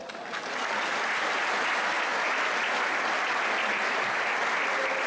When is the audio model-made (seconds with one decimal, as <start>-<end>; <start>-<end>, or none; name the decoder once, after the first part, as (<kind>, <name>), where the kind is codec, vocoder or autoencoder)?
none